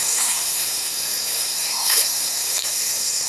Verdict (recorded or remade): remade